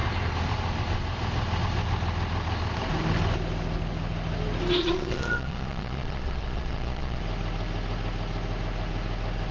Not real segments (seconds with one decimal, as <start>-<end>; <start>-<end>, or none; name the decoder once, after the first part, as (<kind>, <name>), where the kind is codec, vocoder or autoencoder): 4.8-7.2 (vocoder, Vocos)